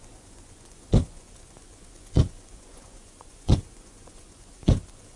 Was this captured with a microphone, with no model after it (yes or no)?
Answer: no